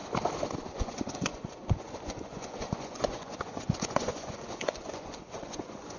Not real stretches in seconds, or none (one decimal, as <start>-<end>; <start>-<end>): 0.7-6.0